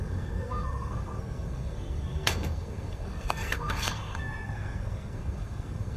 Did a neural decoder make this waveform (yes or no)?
yes